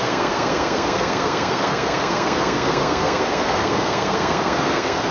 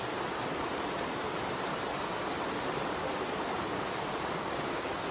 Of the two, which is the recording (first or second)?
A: second